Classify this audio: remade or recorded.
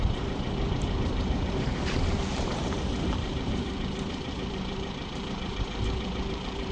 remade